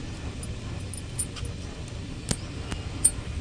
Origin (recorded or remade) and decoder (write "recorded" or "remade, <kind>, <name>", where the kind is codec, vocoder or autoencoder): recorded